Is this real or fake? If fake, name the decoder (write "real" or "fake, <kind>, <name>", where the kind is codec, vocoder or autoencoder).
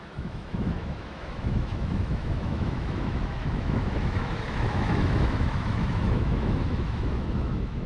fake, autoencoder, DAC-VAE